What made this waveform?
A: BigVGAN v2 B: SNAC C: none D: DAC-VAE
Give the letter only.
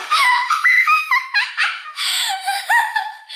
D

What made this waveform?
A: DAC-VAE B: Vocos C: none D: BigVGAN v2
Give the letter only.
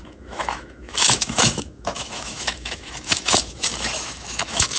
A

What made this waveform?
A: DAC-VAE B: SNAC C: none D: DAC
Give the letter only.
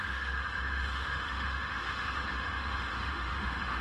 A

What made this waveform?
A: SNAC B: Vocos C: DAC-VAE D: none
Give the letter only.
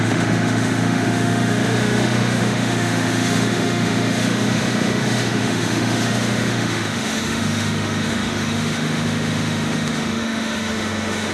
C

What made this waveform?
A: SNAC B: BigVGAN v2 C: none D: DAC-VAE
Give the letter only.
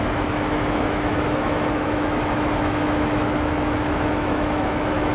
D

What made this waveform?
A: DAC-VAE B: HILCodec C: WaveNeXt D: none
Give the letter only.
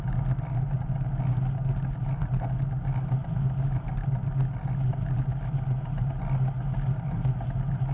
D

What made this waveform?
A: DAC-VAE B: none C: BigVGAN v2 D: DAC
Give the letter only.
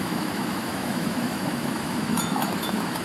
A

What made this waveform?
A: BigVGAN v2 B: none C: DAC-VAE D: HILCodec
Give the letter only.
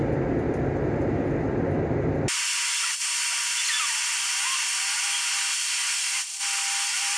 B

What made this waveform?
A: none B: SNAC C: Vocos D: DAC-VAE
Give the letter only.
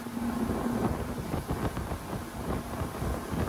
A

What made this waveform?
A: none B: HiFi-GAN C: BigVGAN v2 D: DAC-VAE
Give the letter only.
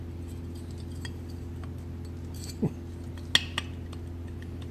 A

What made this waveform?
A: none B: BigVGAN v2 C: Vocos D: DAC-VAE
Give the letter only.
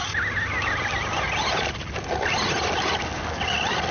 A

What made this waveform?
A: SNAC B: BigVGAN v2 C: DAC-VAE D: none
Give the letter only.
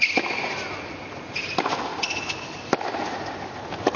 D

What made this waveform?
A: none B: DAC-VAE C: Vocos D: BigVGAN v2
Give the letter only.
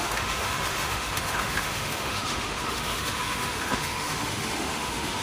B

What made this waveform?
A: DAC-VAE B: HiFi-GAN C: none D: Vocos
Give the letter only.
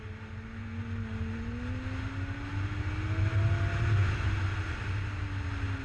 C